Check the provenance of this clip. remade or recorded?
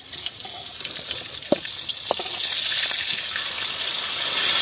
recorded